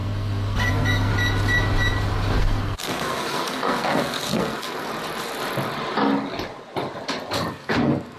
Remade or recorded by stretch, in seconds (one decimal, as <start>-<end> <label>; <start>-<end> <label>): 0.0-1.1 remade; 1.1-2.4 recorded; 2.4-4.9 remade; 4.9-7.5 recorded; 7.5-8.2 remade

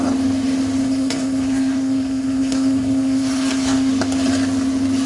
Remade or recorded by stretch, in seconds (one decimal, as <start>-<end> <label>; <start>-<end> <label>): 0.0-0.8 recorded; 0.8-3.9 remade; 3.9-5.1 recorded

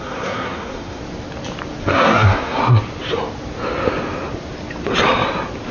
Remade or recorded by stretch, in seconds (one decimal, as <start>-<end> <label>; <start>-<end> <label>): 0.0-1.0 remade; 1.0-1.8 recorded; 1.8-2.6 remade; 2.6-5.7 recorded

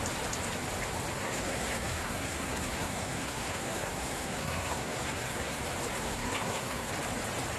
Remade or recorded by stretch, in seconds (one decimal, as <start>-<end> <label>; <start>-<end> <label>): 0.0-1.2 recorded; 1.2-5.6 remade; 5.6-6.0 recorded; 6.0-6.9 remade; 6.9-7.6 recorded